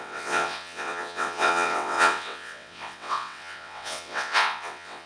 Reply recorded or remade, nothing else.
remade